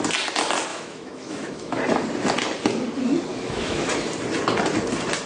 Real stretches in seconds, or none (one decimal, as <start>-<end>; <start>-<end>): 0.0-0.7; 1.8-3.3; 3.9-5.3

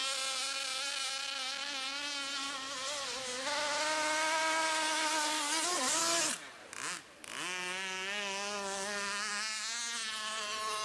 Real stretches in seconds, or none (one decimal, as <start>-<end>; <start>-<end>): 0.0-10.8

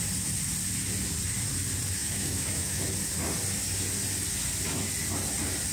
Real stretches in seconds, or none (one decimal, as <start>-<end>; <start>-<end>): 0.0-2.0; 2.8-5.7

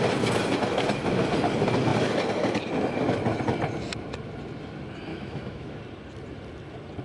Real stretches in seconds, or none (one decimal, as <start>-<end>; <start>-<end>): 0.0-5.1; 5.8-7.0

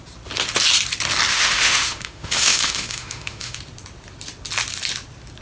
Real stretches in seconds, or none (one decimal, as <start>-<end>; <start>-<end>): 0.0-1.3; 3.6-5.4

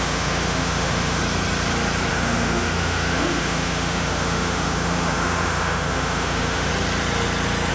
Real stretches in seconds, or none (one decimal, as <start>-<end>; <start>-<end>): 1.2-2.1; 6.7-7.7

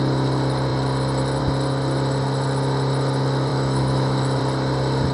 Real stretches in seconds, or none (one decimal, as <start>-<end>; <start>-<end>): 0.0-3.5; 4.4-5.1